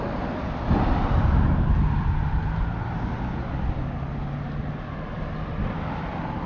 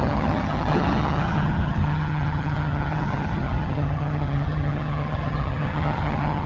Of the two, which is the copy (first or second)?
second